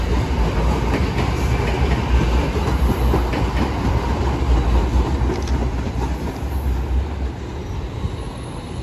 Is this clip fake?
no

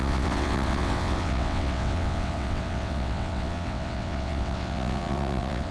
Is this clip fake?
yes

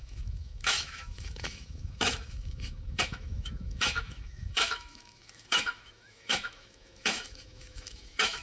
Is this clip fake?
yes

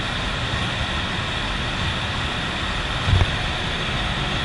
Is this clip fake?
no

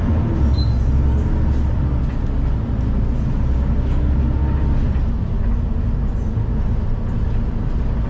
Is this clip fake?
no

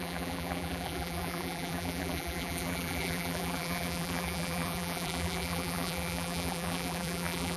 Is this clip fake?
yes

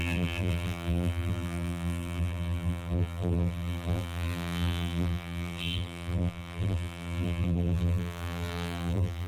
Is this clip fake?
yes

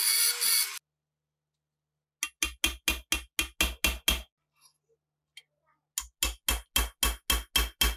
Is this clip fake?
no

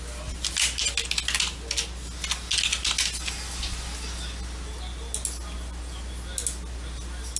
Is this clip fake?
no